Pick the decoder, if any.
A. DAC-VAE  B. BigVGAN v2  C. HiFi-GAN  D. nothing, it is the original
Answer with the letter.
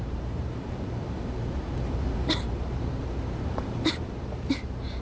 B